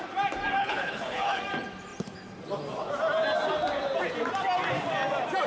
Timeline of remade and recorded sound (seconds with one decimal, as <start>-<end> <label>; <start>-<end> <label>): 0.0-0.6 recorded; 0.6-1.4 remade; 1.4-5.5 recorded